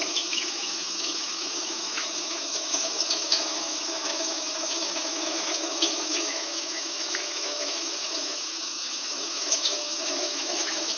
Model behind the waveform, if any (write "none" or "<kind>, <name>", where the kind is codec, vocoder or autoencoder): autoencoder, DAC-VAE